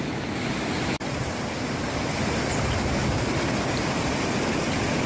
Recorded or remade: recorded